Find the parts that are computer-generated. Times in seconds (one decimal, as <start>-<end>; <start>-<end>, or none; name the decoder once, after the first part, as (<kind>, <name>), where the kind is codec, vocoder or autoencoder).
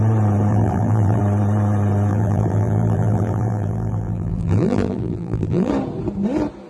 0.5-1.2 (vocoder, BigVGAN v2); 2.1-5.7